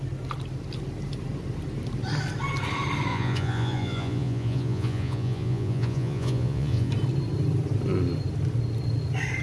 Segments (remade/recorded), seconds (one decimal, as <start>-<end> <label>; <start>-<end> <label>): 0.0-3.1 recorded; 3.1-6.9 remade; 6.9-9.4 recorded